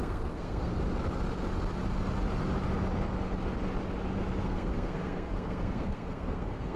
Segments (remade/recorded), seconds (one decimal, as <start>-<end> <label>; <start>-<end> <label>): 0.0-0.7 remade; 0.7-4.4 recorded; 4.4-6.8 remade